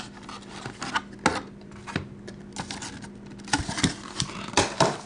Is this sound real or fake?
real